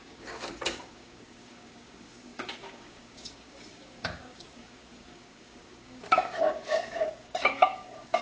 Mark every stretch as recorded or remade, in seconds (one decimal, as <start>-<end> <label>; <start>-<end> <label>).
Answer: 0.0-8.2 remade